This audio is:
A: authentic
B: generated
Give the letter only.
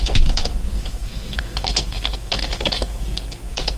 B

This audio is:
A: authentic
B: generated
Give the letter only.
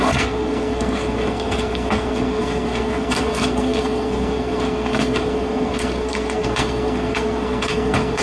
B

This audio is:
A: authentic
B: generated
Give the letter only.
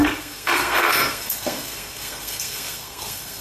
B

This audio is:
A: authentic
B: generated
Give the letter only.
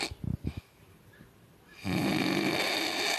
A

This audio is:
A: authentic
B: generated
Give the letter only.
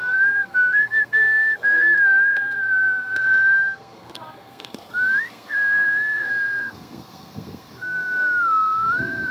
B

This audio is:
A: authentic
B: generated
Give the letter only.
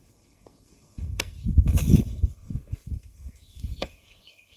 B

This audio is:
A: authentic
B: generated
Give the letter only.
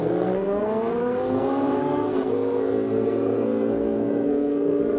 B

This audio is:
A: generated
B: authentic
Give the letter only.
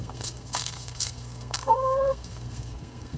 A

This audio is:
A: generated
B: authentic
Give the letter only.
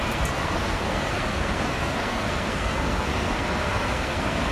A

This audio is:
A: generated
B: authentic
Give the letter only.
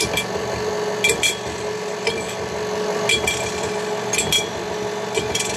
B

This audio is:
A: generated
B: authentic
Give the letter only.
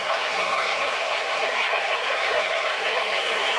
A